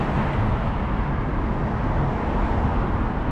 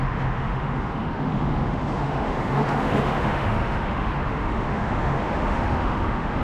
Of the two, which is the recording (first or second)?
first